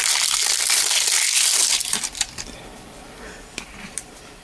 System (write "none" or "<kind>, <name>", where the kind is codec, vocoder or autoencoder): vocoder, BigVGAN v2